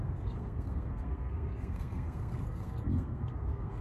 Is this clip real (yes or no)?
no